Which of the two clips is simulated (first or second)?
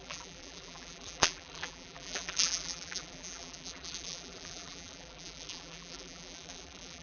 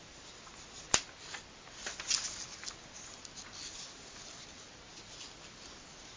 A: first